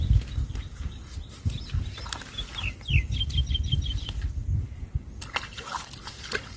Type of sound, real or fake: real